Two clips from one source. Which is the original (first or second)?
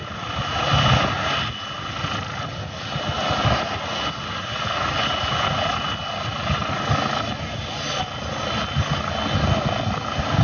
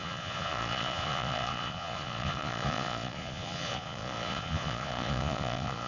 first